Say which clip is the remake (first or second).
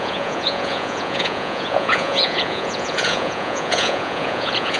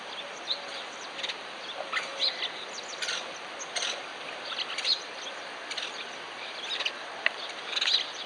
first